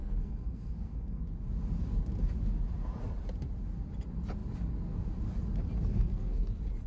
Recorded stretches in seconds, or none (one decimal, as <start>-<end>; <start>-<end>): 1.2-5.9; 6.5-6.9